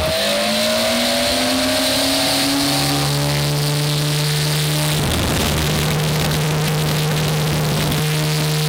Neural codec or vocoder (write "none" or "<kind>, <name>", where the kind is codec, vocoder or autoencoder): none